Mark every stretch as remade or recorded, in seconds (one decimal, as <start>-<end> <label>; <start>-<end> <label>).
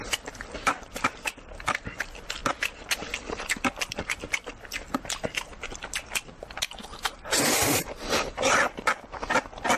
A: 0.0-9.8 recorded